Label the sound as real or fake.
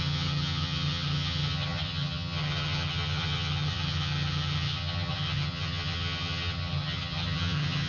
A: fake